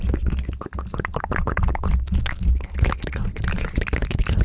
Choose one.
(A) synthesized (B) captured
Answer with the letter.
B